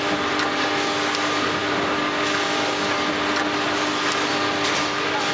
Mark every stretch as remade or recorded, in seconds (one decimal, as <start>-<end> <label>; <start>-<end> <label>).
0.0-5.3 recorded